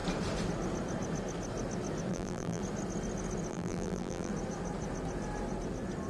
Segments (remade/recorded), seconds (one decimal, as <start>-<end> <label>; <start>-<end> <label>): 0.0-2.1 recorded; 2.1-2.6 remade; 2.6-3.5 recorded; 3.5-4.3 remade; 4.3-6.1 recorded